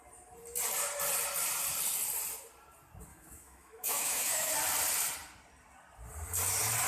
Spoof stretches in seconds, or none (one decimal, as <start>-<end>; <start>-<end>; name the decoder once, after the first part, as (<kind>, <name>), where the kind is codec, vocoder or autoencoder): 3.1-4.5 (autoencoder, DAC-VAE)